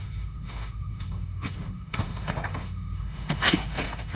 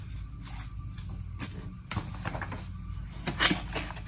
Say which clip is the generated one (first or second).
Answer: first